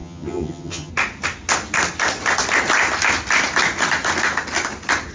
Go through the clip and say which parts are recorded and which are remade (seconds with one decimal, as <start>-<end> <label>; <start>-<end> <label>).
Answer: 0.0-0.9 remade; 0.9-5.1 recorded

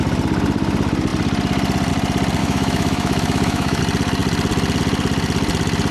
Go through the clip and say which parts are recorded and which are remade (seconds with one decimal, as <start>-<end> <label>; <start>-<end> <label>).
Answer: 0.0-2.4 recorded; 2.4-3.8 remade; 3.8-5.9 recorded